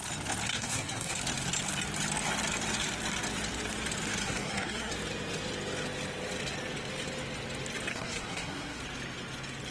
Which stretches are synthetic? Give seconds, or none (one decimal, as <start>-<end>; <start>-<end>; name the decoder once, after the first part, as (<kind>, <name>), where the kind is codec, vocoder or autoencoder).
0.5-1.2 (codec, SNAC); 4.2-4.9; 7.9-8.8